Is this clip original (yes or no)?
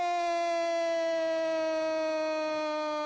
yes